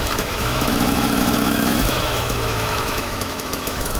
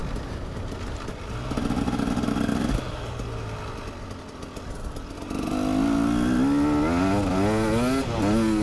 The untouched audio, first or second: second